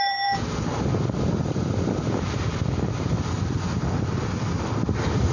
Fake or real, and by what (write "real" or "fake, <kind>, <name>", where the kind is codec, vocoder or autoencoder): fake, vocoder, BigVGAN v2